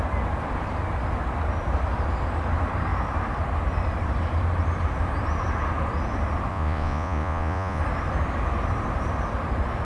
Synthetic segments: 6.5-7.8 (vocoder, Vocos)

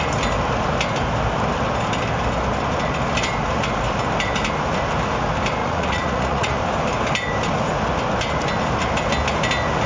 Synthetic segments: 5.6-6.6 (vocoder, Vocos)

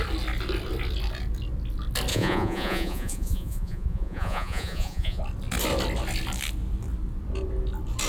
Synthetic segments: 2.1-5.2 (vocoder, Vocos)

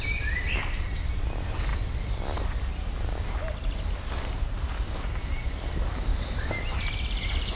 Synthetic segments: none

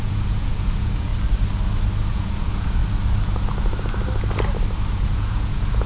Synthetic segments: 0.0-1.1 (vocoder, Vocos); 2.1-2.8; 4.9-5.9

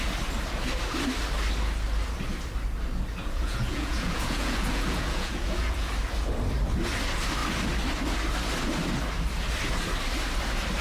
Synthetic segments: 3.2-5.9 (vocoder, Vocos)

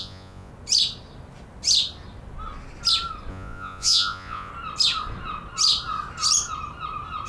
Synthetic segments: 0.0-0.5 (vocoder, Vocos); 3.3-4.5